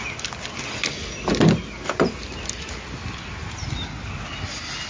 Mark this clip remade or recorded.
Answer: recorded